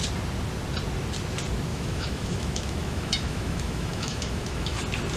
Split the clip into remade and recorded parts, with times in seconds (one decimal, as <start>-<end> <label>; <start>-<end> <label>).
0.0-1.7 recorded; 1.7-4.8 remade; 4.8-5.2 recorded